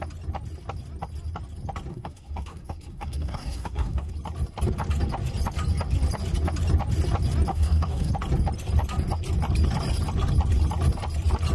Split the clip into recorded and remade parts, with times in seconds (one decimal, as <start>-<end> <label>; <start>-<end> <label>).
0.0-1.9 recorded; 1.9-4.1 remade; 4.1-7.5 recorded; 7.5-8.1 remade; 8.1-11.5 recorded